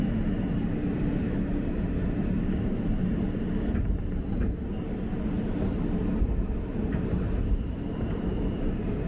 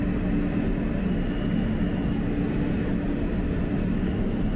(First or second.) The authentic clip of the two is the second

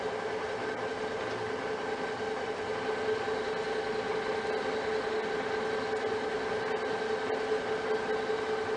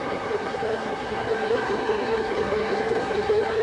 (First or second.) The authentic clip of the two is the first